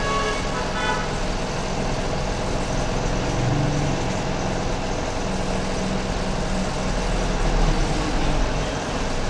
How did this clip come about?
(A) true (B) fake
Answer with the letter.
A